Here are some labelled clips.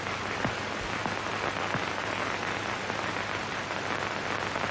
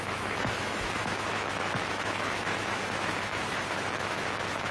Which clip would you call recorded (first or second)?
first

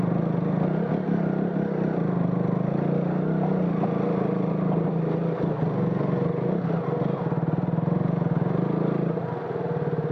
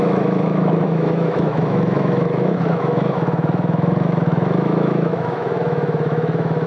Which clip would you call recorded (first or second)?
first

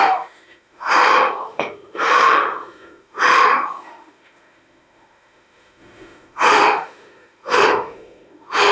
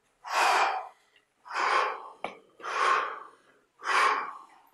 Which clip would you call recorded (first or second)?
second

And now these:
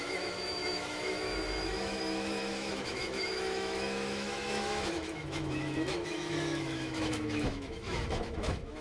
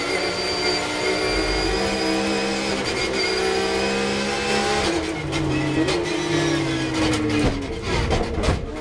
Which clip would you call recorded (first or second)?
second